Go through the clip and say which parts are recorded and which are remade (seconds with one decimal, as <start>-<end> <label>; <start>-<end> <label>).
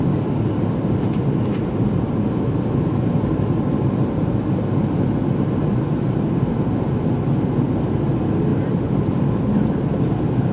0.0-8.5 recorded; 8.5-9.9 remade; 9.9-10.5 recorded